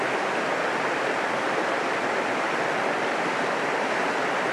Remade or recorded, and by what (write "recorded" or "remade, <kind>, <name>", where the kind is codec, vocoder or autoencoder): recorded